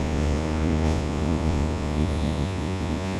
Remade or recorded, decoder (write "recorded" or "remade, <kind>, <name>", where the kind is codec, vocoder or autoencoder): remade, vocoder, Vocos